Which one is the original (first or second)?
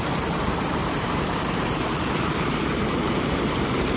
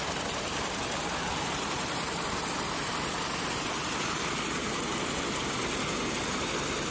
second